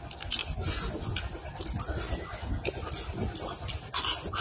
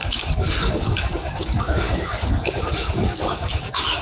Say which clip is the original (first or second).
first